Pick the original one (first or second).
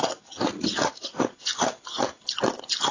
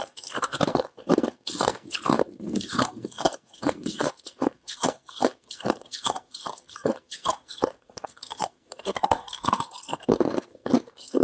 first